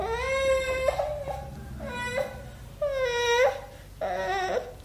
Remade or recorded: recorded